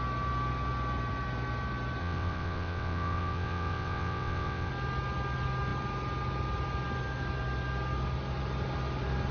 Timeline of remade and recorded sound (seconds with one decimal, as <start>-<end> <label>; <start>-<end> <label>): 0.0-2.0 recorded; 2.0-4.7 remade; 4.7-9.3 recorded

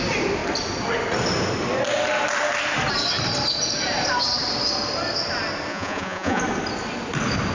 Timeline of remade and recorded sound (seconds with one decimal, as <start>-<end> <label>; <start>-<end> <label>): 0.0-5.7 recorded; 5.7-6.4 remade; 6.4-7.5 recorded

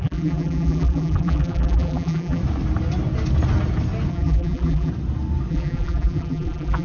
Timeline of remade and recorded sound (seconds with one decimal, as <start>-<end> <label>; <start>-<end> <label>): 0.0-2.4 remade; 2.4-4.1 recorded; 4.1-4.9 remade; 4.9-5.5 recorded; 5.5-6.8 remade

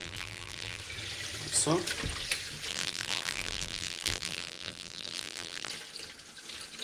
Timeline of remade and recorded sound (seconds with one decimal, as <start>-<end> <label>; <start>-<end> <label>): 0.0-0.8 remade; 0.8-2.7 recorded; 2.7-5.7 remade; 5.7-6.8 recorded

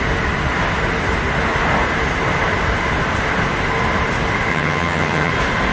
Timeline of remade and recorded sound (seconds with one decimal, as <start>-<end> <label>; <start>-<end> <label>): 0.0-4.5 recorded; 4.5-5.3 remade; 5.3-5.7 recorded

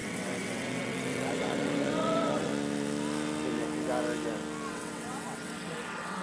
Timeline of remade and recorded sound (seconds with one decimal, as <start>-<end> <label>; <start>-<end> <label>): 0.0-2.5 remade; 2.5-4.7 recorded; 4.7-6.2 remade

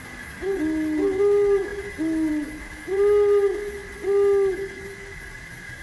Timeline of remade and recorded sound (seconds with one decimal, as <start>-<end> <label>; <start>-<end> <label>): 0.0-5.8 recorded